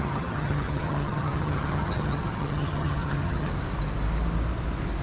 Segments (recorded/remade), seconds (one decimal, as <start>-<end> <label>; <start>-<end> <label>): 0.0-3.5 remade; 3.5-5.0 recorded